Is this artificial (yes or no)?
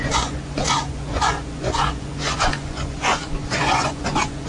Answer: yes